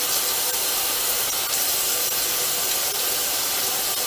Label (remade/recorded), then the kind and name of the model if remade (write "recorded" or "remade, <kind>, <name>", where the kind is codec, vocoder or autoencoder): recorded